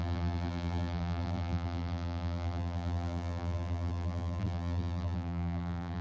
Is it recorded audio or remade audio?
remade